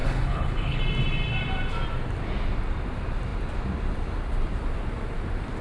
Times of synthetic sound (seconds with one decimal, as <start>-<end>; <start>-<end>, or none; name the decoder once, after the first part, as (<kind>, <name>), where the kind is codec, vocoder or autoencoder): 0.0-0.8 (codec, HILCodec)